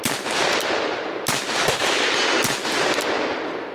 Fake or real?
real